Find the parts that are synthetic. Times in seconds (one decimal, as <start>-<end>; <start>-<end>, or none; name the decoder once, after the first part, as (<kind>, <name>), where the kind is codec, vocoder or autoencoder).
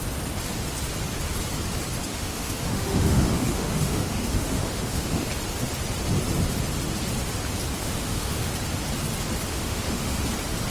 2.1-5.3 (autoencoder, DAC-VAE); 7.8-8.5; 9.5-10.2